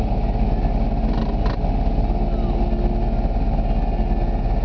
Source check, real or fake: real